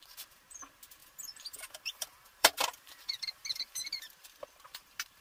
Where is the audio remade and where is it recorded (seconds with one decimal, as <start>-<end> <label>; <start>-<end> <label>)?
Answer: 0.0-1.0 recorded; 1.0-4.1 remade; 4.1-5.2 recorded